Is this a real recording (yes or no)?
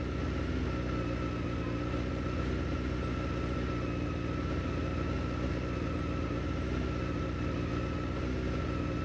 yes